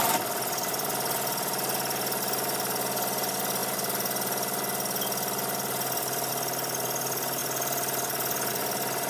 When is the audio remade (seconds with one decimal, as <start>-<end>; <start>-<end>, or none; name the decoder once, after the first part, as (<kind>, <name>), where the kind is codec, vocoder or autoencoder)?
none